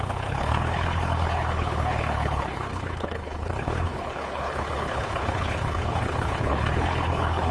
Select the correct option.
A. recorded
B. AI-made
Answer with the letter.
B